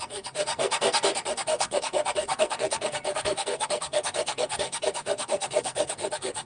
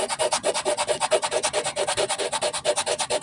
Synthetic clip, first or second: first